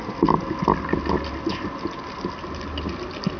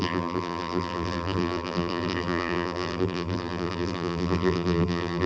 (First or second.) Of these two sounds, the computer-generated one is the second